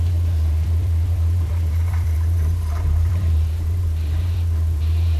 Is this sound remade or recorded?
remade